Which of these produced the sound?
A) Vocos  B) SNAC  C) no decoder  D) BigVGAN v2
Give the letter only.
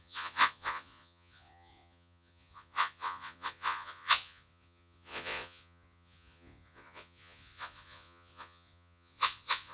A